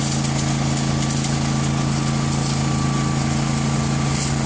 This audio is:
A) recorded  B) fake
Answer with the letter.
A